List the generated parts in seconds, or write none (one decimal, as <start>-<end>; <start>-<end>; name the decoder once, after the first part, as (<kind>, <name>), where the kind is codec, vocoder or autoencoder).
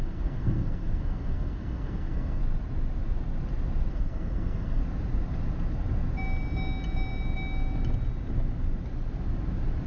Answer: 0.0-2.4 (codec, SNAC); 3.9-4.8